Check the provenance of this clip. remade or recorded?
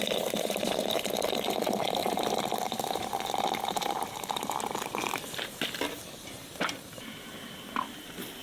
remade